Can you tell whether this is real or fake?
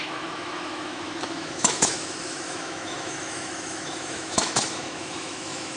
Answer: fake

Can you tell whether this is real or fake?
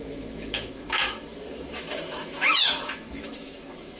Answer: fake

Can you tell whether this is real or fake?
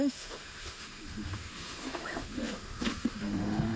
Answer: fake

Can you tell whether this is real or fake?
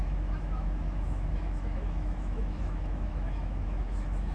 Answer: fake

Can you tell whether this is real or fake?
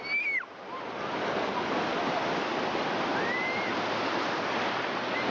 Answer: real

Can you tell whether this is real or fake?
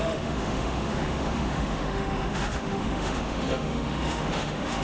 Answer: fake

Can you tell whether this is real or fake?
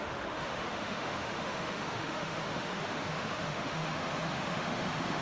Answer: fake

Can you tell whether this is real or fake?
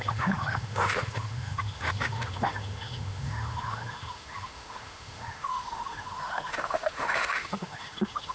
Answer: fake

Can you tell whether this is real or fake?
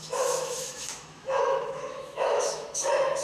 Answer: fake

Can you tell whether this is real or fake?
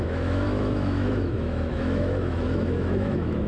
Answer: fake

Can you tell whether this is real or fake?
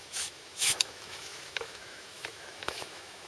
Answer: fake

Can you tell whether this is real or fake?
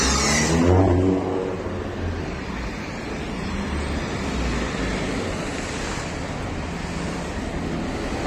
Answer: real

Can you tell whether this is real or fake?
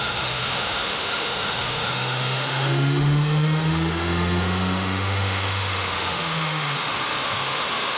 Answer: fake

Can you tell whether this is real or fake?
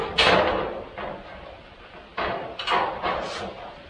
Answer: real